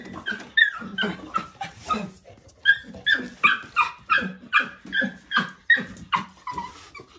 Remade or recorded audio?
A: recorded